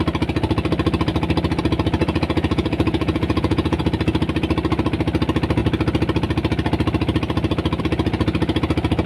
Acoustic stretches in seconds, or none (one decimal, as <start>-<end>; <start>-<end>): 0.0-2.0; 3.8-9.1